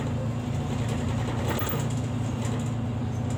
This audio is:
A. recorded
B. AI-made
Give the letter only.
A